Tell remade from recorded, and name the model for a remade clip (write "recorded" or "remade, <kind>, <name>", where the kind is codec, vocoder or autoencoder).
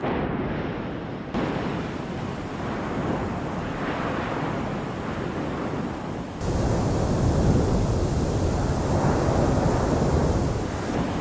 recorded